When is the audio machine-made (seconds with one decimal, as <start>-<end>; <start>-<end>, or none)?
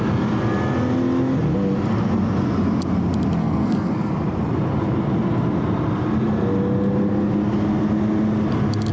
3.4-4.1